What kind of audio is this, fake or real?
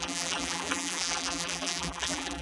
fake